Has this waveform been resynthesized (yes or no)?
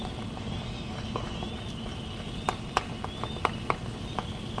no